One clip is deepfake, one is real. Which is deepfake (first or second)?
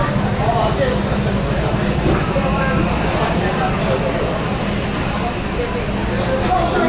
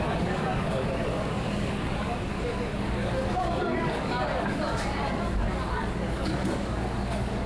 second